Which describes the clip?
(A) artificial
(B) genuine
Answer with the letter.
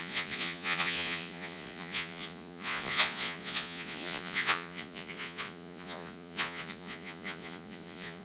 A